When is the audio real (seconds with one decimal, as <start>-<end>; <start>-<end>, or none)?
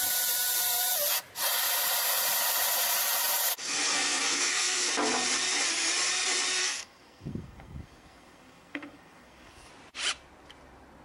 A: 0.0-3.5; 4.9-6.6; 9.7-11.0